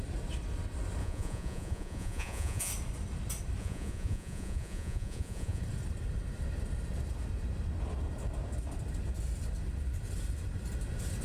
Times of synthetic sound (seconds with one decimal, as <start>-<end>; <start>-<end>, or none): 1.0-2.7; 3.6-5.6